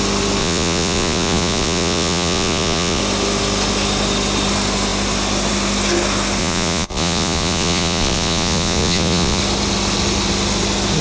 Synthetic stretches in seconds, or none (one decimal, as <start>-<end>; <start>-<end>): 0.4-3.0; 6.4-9.4